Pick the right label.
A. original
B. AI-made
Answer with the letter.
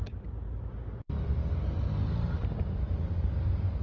A